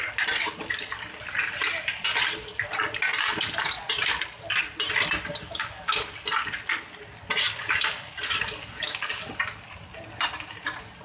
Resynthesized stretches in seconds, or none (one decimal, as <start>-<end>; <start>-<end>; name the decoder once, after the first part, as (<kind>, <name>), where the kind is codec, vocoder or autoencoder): none